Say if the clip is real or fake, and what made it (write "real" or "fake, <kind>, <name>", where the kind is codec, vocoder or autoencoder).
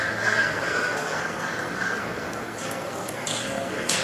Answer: fake, codec, SNAC